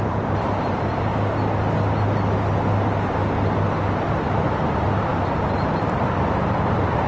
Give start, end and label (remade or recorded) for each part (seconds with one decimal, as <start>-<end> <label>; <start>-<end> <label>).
0.0-1.1 remade; 1.1-4.1 recorded; 4.1-5.1 remade; 5.1-5.8 recorded; 5.8-7.1 remade